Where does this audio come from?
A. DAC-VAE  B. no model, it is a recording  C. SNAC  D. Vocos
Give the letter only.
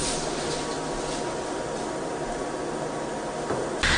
B